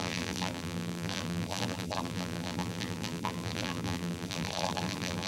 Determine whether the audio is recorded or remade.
remade